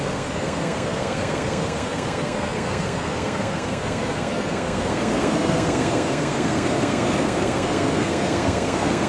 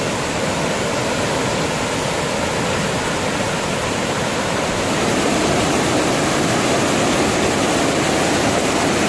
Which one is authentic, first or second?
second